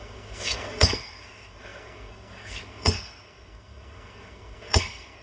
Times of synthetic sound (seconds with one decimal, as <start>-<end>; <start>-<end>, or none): 0.0-5.2